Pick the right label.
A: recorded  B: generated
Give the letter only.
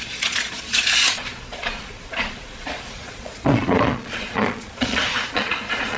B